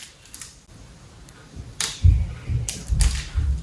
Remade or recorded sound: recorded